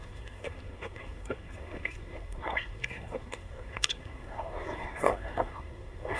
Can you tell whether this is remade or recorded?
remade